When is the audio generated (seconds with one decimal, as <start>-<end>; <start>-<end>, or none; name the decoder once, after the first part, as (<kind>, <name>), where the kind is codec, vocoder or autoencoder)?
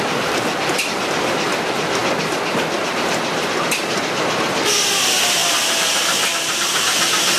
0.0-2.0 (vocoder, BigVGAN v2); 2.8-7.4